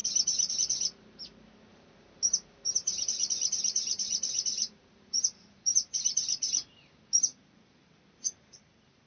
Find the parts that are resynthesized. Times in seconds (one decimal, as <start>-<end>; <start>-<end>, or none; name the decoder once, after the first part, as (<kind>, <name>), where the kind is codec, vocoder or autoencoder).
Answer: 1.7-6.5 (vocoder, BigVGAN v2); 7.3-9.1

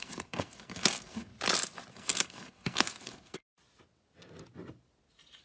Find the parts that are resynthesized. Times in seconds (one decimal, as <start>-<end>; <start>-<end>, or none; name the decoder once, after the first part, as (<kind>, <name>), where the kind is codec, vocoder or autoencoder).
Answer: 0.0-1.3 (codec, SNAC); 1.9-3.4

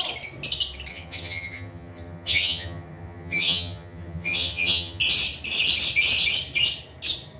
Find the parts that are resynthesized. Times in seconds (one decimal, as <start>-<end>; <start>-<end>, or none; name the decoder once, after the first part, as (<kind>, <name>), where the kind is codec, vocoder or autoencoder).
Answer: 0.9-5.0 (vocoder, HiFi-GAN)

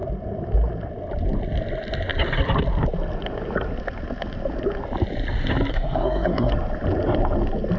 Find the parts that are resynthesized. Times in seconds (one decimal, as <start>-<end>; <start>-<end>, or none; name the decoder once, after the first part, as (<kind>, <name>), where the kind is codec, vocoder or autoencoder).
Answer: 5.7-6.5 (codec, SNAC)

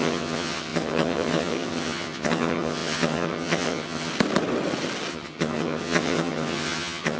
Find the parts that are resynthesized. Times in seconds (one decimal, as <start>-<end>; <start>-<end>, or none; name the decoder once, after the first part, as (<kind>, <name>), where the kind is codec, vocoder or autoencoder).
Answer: 0.0-4.1 (vocoder, HiFi-GAN); 5.1-7.2